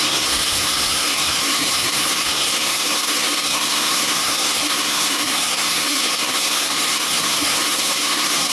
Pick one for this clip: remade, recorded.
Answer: remade